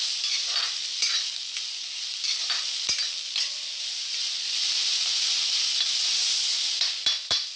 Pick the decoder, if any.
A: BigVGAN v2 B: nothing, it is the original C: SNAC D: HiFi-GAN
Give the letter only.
B